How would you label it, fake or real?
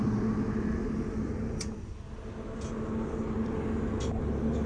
real